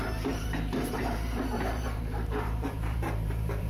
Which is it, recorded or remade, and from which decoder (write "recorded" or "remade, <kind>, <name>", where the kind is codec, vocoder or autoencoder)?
remade, vocoder, BigVGAN v2